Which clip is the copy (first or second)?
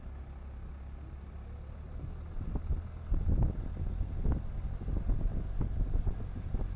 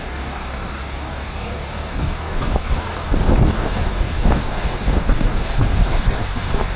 second